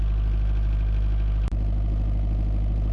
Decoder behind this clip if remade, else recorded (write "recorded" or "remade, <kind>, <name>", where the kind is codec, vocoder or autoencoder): recorded